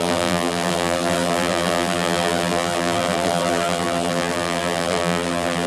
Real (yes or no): no